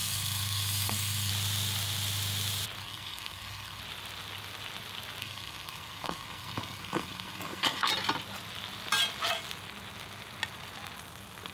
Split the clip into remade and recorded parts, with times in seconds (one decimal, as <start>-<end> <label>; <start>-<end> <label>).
0.0-1.3 remade; 1.3-2.8 recorded; 2.8-3.8 remade; 3.8-5.2 recorded; 5.2-7.9 remade; 7.9-11.5 recorded